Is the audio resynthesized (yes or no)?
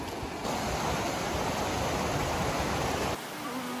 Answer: no